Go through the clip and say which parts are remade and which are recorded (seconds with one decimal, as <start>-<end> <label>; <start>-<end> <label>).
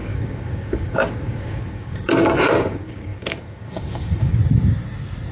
0.0-4.4 remade; 4.4-5.3 recorded